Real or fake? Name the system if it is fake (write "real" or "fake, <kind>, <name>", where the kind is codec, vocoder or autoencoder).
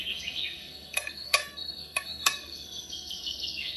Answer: fake, codec, SNAC